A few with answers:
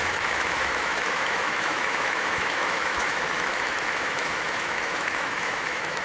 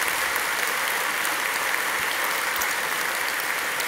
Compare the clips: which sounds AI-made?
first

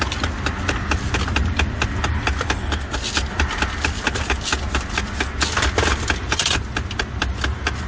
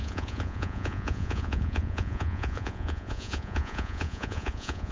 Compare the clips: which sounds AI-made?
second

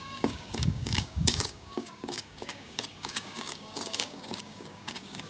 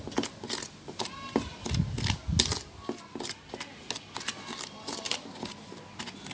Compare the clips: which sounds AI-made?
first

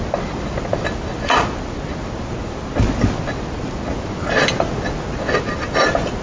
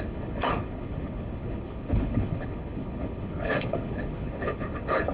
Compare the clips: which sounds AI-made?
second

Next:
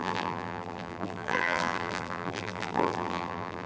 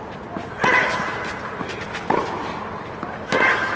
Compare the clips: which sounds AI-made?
first